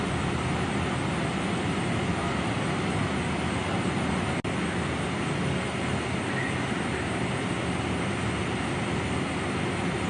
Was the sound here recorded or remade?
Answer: recorded